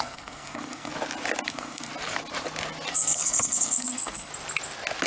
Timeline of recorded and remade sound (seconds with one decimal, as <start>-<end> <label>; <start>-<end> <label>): 0.0-0.9 remade; 0.9-1.5 recorded; 1.5-1.9 remade; 1.9-2.9 recorded; 2.9-4.3 remade; 4.3-5.1 recorded